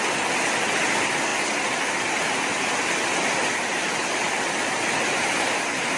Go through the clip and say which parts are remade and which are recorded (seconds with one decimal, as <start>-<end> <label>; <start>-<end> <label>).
0.0-1.3 recorded; 1.3-1.9 remade; 1.9-6.0 recorded